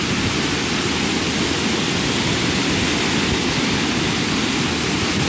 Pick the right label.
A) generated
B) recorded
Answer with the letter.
B